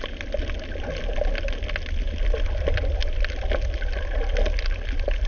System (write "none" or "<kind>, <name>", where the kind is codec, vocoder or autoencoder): none